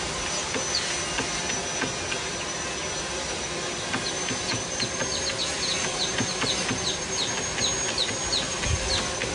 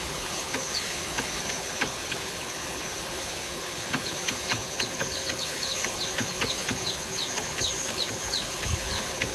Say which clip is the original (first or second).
first